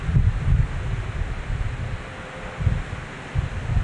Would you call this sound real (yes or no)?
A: yes